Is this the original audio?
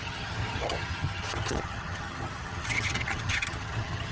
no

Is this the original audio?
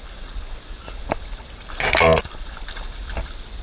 yes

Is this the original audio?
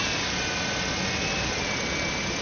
yes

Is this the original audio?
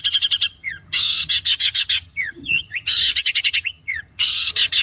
no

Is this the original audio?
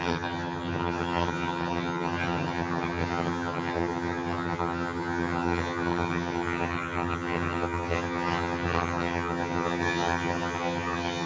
no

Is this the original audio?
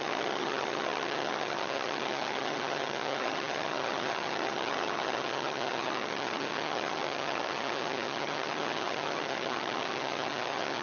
no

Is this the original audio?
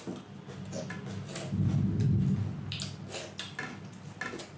yes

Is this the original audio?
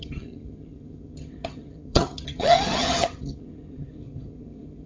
no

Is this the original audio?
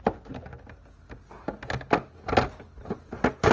yes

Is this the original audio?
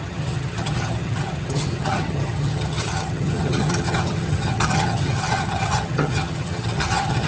no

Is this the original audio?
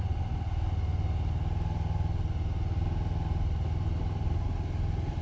yes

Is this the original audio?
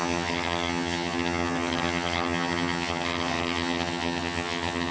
no